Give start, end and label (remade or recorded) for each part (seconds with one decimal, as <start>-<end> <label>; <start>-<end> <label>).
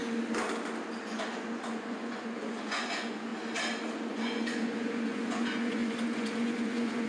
0.0-1.0 recorded; 1.0-3.3 remade; 3.3-4.1 recorded; 4.1-7.1 remade